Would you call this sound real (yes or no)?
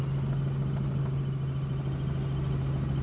yes